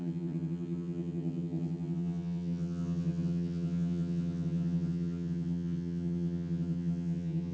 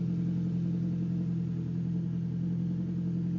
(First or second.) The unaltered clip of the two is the second